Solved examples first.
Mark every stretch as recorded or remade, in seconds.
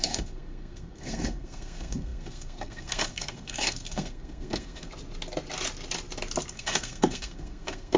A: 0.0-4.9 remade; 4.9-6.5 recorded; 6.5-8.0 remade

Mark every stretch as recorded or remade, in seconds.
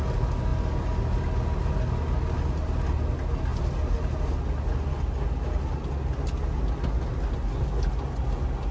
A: 0.0-8.7 recorded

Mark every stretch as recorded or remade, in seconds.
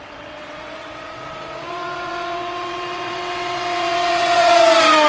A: 0.0-5.1 remade